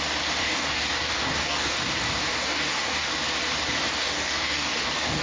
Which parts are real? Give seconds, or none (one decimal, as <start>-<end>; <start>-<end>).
0.0-0.4; 1.8-2.3; 3.1-4.0